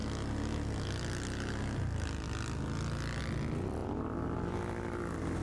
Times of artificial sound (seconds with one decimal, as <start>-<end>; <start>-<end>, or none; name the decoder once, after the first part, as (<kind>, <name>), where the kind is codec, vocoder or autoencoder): none

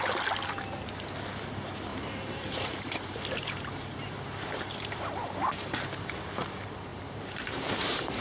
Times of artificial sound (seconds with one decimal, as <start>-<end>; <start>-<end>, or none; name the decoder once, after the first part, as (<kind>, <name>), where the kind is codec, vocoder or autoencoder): 1.9-6.1 (vocoder, BigVGAN v2); 6.9-8.2

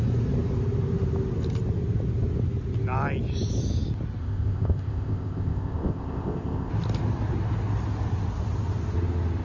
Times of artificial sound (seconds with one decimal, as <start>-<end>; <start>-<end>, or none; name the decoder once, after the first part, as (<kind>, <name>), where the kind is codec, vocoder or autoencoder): 4.2-6.7 (codec, ZipCodec)

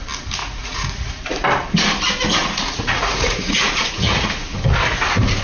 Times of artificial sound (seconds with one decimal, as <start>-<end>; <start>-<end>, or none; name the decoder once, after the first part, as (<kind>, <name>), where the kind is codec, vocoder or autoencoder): 0.4-1.1 (vocoder, Vocos); 2.4-4.3

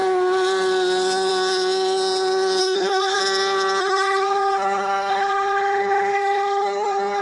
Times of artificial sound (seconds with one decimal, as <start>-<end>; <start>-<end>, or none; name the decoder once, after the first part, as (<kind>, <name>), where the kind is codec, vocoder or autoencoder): 2.6-3.2 (codec, SNAC); 3.8-7.2

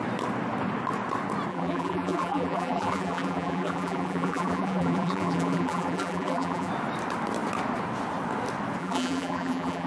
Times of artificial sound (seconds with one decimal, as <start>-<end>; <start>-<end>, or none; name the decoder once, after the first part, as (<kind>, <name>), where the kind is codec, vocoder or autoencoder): 1.5-6.7 (vocoder, BigVGAN v2); 8.8-9.9

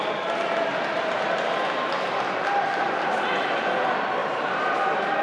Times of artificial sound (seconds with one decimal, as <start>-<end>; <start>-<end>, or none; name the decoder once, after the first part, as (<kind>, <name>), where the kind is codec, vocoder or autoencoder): 0.7-1.6 (vocoder, BigVGAN v2); 4.2-4.7

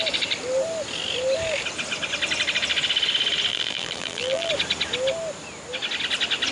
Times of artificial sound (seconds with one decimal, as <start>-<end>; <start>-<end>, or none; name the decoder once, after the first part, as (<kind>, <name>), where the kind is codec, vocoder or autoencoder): 3.5-4.5 (vocoder, BigVGAN v2)